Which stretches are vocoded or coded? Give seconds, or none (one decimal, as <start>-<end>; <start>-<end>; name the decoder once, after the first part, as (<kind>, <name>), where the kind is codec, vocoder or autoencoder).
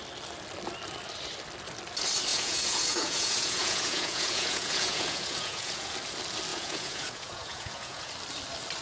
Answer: 2.3-5.9 (vocoder, Vocos); 6.5-8.1